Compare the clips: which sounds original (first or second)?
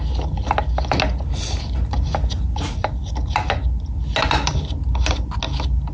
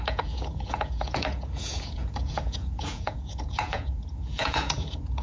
first